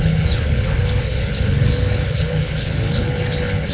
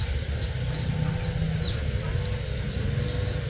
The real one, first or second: second